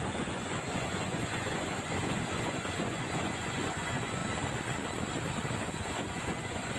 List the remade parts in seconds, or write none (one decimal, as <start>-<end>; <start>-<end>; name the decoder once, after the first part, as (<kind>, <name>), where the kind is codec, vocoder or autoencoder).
0.0-4.2 (vocoder, Vocos); 5.6-6.8